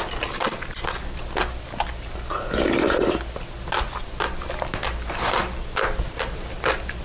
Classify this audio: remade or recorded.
recorded